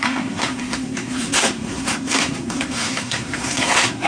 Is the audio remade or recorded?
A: remade